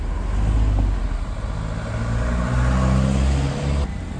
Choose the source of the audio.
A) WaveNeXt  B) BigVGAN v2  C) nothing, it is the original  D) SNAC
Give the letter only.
C